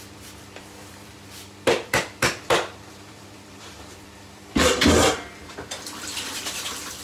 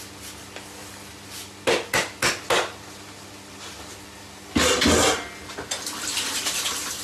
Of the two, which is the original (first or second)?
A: second